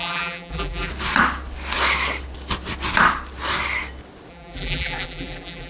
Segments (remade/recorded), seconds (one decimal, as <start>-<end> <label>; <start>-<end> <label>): 0.0-0.9 remade; 0.9-4.3 recorded; 4.3-5.7 remade